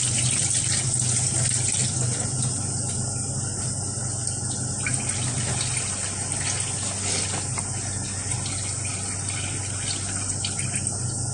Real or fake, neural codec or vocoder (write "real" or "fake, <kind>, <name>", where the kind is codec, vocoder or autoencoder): real